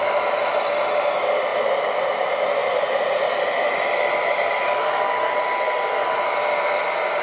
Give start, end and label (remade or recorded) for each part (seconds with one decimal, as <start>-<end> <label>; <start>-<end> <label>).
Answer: 0.0-7.2 recorded